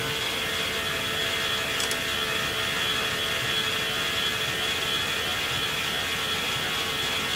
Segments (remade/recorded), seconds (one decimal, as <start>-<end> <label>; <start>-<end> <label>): 0.0-7.4 recorded